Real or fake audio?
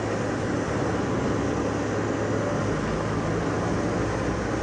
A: real